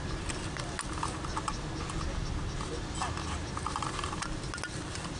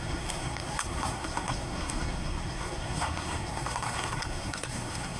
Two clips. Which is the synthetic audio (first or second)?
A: second